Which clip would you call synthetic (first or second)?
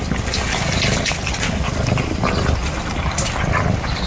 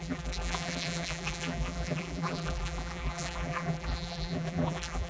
second